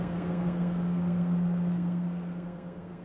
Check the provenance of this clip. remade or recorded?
remade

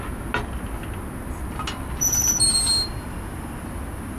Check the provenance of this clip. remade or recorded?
recorded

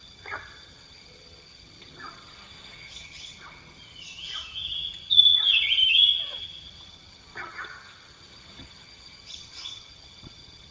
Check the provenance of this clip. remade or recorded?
remade